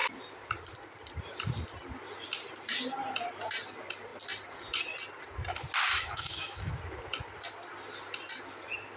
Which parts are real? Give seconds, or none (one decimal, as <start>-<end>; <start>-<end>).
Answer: 0.0-5.9; 6.7-9.0